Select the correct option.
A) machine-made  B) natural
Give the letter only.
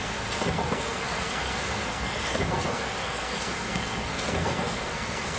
A